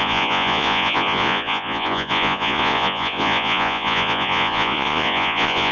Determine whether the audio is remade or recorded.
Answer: remade